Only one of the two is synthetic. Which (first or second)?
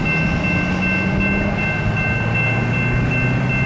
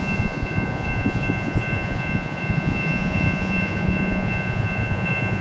second